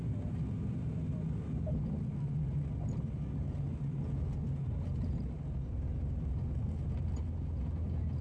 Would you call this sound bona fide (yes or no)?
yes